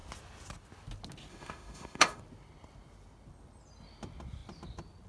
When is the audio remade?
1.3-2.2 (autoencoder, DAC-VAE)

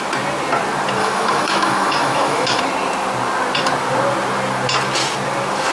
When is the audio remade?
1.0-2.6 (autoencoder, DAC-VAE)

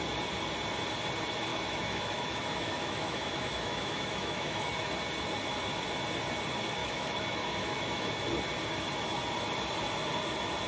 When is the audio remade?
1.5-4.9 (autoencoder, DAC-VAE); 6.8-8.1

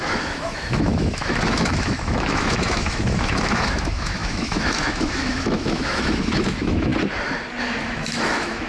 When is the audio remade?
0.0-6.9 (autoencoder, DAC-VAE); 7.6-8.7

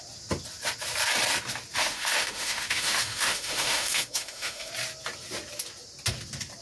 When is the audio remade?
1.8-4.7 (autoencoder, DAC-VAE)

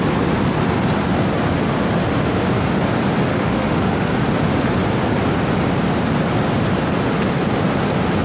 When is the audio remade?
3.3-4.1 (autoencoder, DAC-VAE)

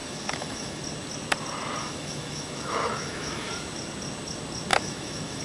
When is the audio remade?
0.0-0.8 (autoencoder, DAC-VAE); 1.8-3.5; 4.7-5.4

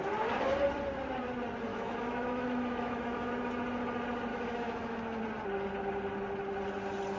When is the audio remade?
1.7-3.3 (autoencoder, DAC-VAE); 4.3-5.2